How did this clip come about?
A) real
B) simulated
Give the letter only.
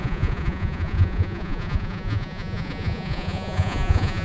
B